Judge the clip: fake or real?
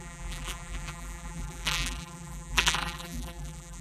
fake